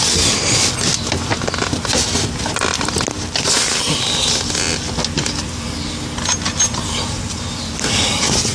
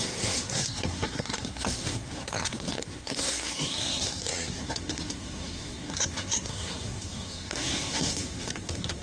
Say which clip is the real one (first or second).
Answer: first